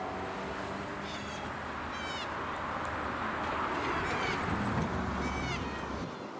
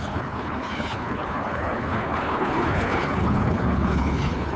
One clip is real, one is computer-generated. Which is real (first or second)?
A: first